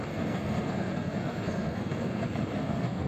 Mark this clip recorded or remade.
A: remade